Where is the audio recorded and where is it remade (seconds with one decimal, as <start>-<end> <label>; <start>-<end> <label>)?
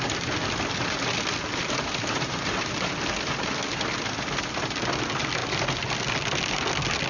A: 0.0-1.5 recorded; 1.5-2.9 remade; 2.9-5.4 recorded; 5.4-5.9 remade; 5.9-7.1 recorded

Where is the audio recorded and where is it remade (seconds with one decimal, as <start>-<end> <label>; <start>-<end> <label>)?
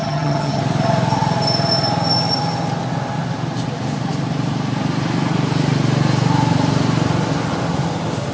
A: 0.0-0.6 remade; 0.6-8.3 recorded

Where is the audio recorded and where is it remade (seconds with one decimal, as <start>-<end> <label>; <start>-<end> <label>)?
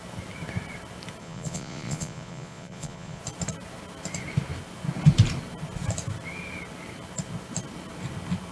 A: 0.0-1.2 recorded; 1.2-3.2 remade; 3.2-8.5 recorded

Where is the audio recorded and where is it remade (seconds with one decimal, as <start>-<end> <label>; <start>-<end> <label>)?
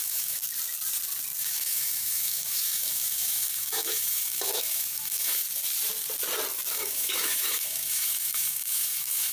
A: 0.0-0.4 remade; 0.4-1.4 recorded; 1.4-5.4 remade; 5.4-6.7 recorded; 6.7-9.3 remade